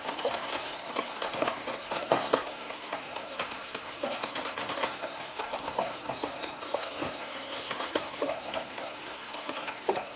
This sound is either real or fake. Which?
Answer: fake